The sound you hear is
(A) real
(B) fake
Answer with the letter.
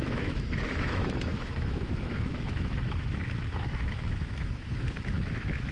B